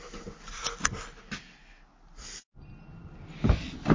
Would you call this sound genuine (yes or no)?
yes